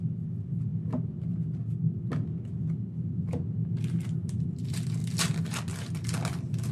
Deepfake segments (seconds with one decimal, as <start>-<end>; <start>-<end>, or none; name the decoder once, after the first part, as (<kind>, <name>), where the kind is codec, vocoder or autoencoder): none